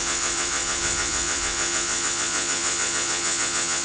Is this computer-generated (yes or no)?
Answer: yes